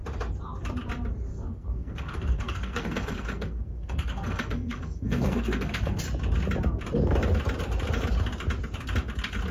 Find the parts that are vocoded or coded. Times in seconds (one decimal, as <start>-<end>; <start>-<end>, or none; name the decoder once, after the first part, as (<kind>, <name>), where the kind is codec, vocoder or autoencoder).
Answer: 1.3-6.0 (codec, SNAC)